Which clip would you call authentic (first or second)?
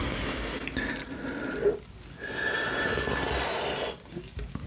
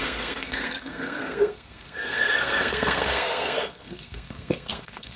first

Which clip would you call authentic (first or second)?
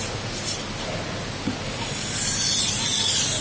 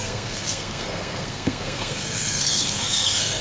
first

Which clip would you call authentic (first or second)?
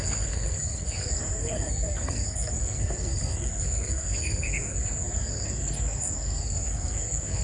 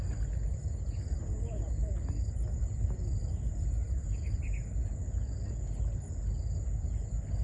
second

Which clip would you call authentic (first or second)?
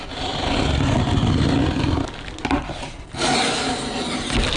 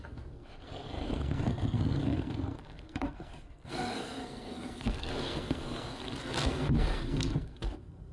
first